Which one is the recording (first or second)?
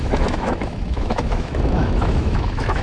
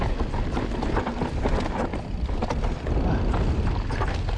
second